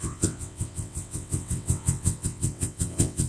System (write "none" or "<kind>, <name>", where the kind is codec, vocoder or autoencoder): vocoder, WaveNeXt